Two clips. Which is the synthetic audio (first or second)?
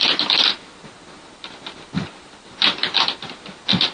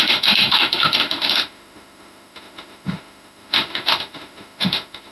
second